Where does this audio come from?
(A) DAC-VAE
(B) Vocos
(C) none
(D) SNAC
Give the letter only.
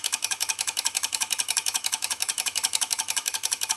A